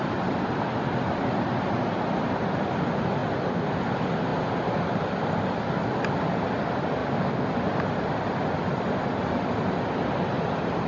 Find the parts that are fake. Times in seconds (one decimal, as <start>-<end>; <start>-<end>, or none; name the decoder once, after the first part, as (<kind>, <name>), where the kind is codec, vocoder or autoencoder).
none